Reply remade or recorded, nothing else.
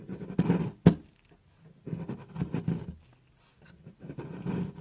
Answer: recorded